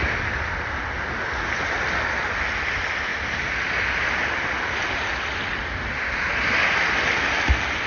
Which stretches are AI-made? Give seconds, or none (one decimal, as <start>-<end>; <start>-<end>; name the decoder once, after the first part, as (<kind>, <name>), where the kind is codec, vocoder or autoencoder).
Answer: none